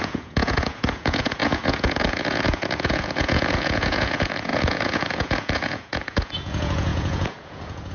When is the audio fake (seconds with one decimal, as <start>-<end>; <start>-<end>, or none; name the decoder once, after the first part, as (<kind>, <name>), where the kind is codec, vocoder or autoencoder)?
0.0-7.9 (vocoder, Vocos)